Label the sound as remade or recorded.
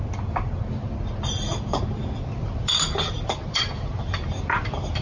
recorded